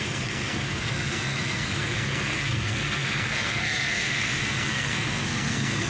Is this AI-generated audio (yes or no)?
yes